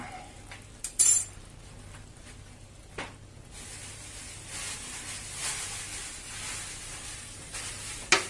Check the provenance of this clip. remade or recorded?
recorded